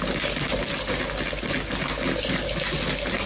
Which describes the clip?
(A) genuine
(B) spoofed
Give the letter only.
A